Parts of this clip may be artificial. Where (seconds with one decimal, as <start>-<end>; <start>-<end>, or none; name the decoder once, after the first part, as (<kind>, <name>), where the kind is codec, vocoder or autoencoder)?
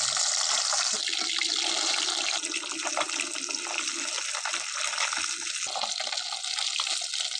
none